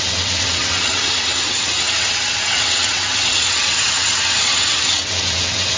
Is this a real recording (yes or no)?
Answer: no